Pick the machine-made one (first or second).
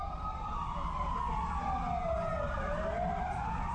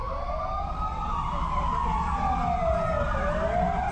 first